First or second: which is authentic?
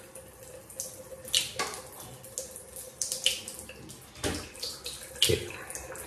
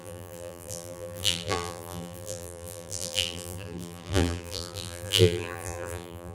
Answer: first